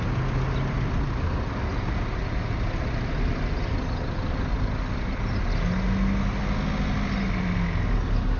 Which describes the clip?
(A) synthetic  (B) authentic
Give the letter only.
B